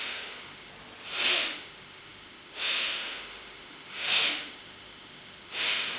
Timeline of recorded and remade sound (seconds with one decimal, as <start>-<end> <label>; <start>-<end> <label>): 0.0-0.7 remade; 0.7-1.3 recorded; 1.3-6.0 remade